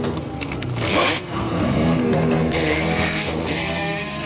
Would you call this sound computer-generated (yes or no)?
yes